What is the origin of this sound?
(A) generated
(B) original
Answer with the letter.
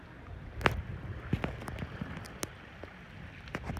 B